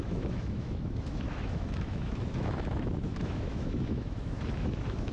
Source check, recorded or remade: remade